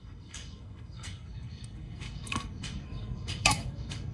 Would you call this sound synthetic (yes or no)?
yes